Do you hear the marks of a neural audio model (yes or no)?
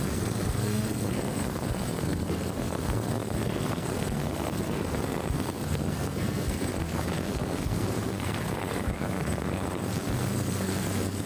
yes